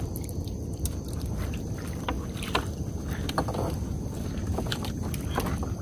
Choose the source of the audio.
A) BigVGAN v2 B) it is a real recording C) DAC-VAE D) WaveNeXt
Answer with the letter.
A